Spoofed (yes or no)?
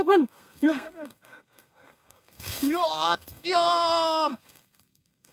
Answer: yes